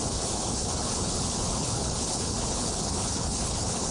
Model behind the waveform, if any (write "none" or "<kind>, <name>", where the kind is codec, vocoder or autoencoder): codec, HILCodec